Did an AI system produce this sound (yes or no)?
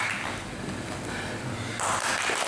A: no